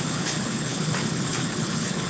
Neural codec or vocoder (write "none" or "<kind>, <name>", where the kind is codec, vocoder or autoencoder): codec, HILCodec